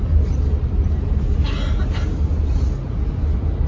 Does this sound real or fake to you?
real